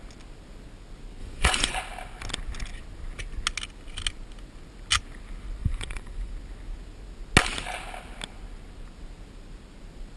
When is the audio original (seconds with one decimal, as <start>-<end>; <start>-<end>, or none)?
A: 0.0-1.2; 1.8-5.6; 6.3-10.2